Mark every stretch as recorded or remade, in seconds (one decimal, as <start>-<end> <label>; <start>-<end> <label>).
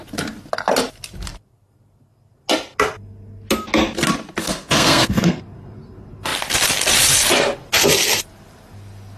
0.0-4.4 recorded; 4.4-5.4 remade; 5.4-9.2 recorded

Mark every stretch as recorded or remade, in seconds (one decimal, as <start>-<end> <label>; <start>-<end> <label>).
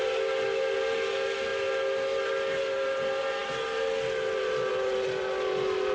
0.0-5.9 recorded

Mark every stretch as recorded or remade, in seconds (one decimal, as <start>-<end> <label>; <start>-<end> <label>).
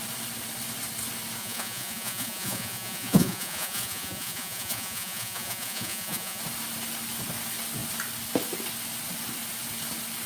0.0-1.4 recorded; 1.4-6.4 remade; 6.4-10.3 recorded